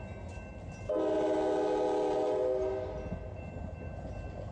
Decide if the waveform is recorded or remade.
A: recorded